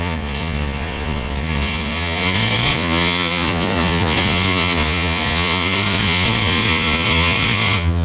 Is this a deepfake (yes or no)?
yes